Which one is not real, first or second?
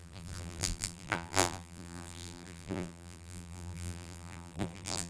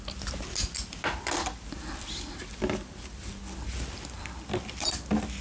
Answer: first